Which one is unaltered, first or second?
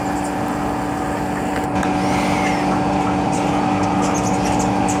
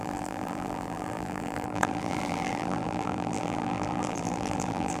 first